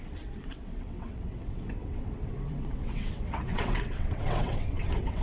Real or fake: fake